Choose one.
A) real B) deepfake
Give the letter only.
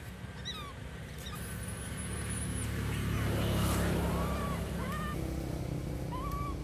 A